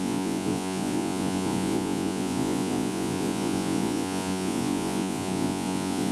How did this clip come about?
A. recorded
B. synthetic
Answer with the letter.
B